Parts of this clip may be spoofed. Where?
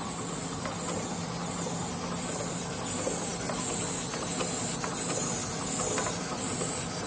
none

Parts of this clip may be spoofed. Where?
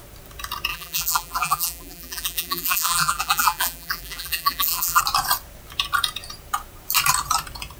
0.7-5.0 (vocoder, BigVGAN v2)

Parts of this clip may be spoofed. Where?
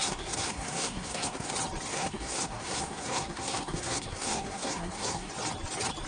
0.0-1.5 (codec, SNAC); 1.9-5.3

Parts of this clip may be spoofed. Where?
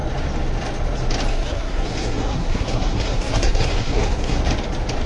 1.3-4.4 (codec, SNAC)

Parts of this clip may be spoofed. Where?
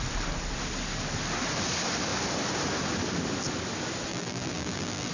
4.1-5.1 (vocoder, BigVGAN v2)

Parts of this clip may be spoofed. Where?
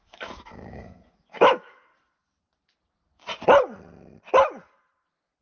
0.0-1.9 (autoencoder, DAC-VAE)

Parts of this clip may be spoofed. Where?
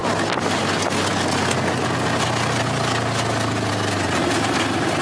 none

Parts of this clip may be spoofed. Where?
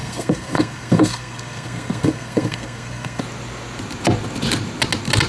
0.0-3.2 (codec, SNAC)